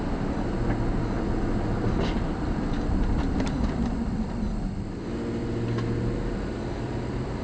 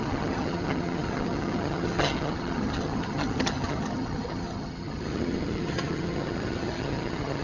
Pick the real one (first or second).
first